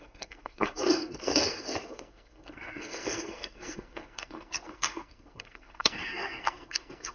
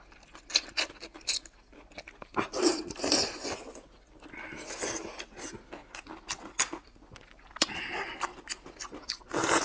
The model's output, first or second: first